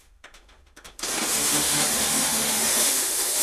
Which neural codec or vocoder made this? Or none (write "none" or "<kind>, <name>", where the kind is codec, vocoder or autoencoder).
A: autoencoder, DAC-VAE